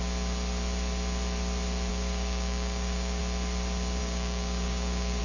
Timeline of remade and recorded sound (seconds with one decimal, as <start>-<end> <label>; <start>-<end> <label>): 0.0-1.9 recorded; 1.9-3.2 remade; 3.2-4.0 recorded; 4.0-5.2 remade